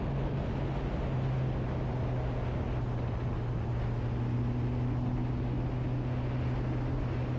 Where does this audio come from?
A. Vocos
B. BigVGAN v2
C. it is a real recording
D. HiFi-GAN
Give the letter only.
C